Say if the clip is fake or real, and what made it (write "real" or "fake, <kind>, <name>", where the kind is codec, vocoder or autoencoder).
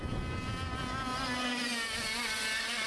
real